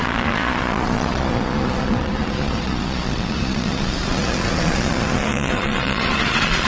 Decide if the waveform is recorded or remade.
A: remade